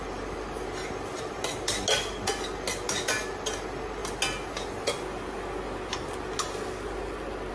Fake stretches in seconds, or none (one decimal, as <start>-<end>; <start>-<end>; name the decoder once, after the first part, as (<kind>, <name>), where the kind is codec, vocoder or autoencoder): none